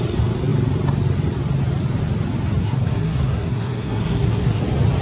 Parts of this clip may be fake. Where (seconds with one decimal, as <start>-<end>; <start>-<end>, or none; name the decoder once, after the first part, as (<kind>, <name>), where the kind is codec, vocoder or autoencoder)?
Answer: 2.6-4.6 (codec, SNAC)